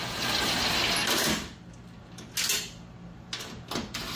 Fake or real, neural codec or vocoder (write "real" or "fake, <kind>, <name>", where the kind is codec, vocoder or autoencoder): real